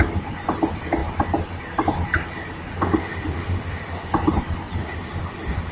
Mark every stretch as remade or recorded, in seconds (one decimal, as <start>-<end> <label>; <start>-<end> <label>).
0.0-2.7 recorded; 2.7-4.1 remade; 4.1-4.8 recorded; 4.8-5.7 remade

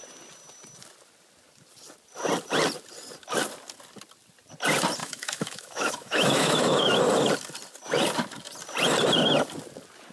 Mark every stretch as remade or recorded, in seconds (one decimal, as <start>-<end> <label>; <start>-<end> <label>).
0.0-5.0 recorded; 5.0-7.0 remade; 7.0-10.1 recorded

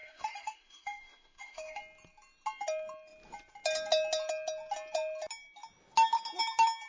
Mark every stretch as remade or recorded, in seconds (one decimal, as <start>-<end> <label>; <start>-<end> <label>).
0.0-1.8 remade; 1.8-6.9 recorded

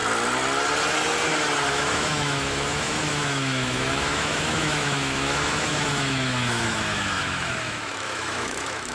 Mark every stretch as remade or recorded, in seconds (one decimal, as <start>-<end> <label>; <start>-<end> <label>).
0.0-1.7 recorded; 1.7-8.9 remade

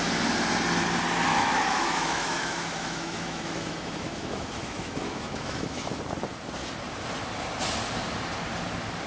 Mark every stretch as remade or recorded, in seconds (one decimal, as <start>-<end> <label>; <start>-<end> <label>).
0.0-1.3 recorded; 1.3-6.0 remade; 6.0-9.1 recorded